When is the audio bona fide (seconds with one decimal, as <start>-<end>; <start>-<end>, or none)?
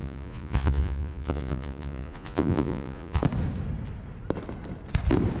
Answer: 3.2-5.4